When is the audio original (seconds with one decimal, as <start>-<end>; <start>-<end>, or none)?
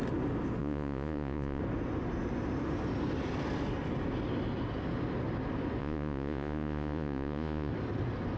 0.0-0.6; 1.6-5.8; 7.7-8.4